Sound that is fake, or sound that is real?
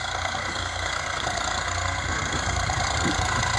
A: fake